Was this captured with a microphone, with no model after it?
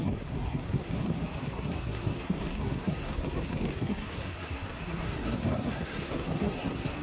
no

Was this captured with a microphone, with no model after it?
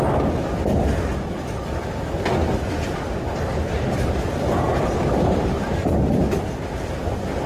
yes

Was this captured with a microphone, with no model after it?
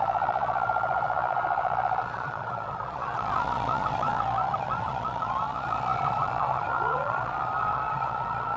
no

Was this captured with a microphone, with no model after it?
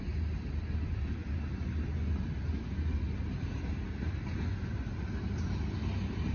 yes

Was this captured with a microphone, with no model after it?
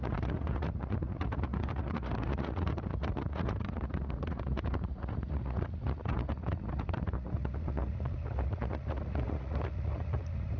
no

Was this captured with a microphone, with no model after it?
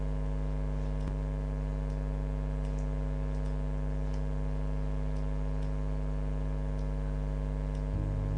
yes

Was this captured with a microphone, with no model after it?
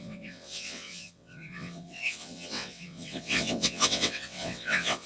no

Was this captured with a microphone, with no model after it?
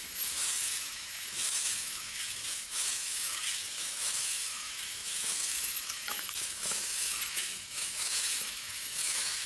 no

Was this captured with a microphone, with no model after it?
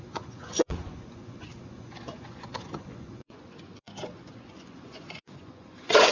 no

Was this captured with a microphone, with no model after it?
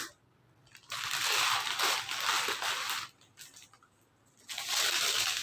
yes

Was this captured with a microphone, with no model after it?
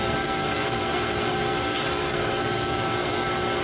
no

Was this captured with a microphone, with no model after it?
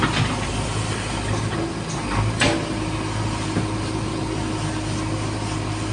yes